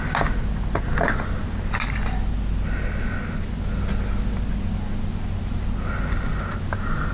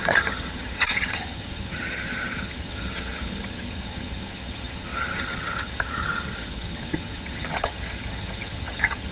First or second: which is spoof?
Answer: second